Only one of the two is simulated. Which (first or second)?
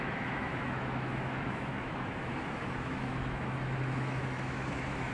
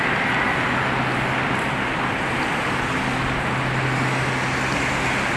first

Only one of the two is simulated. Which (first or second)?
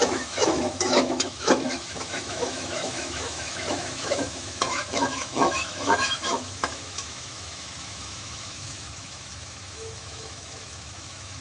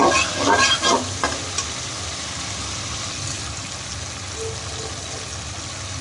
first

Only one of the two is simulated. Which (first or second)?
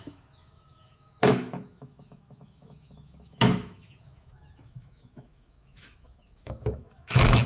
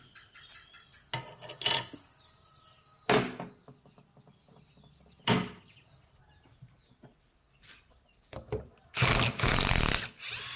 first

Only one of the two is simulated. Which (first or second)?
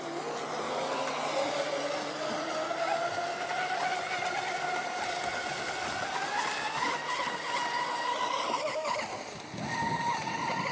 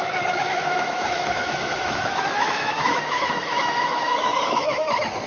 second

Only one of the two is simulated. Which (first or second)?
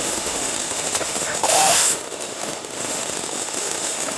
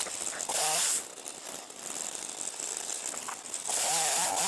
first